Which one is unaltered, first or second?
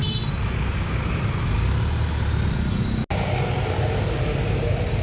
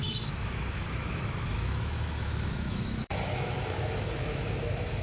first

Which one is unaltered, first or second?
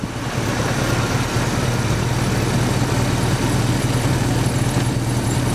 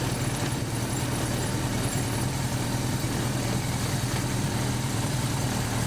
first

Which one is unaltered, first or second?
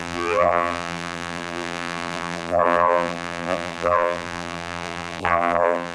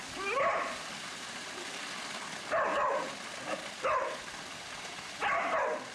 second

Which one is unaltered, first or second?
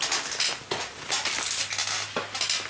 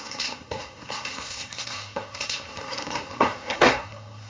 first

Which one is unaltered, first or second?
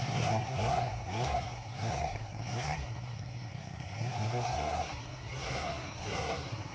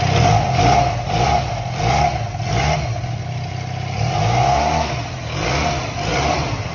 second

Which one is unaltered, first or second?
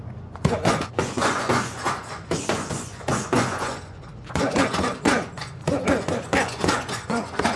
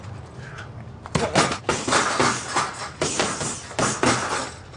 second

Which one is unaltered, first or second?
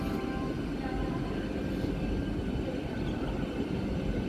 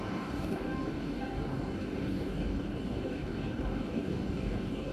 first